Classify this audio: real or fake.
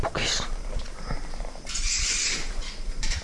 fake